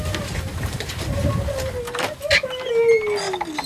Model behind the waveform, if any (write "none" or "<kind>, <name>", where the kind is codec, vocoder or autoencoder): none